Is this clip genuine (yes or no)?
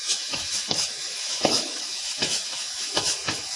no